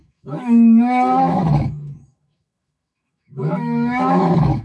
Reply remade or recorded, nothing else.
remade